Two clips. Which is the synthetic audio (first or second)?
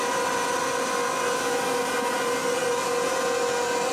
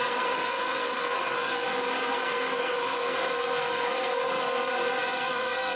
second